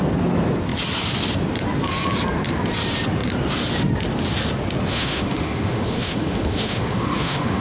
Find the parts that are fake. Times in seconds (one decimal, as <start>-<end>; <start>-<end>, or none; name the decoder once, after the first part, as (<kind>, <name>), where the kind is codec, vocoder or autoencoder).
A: 4.9-7.6 (autoencoder, DAC-VAE)